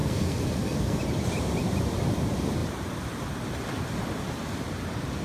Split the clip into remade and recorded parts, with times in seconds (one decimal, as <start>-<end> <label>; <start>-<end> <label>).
0.0-1.0 remade; 1.0-5.2 recorded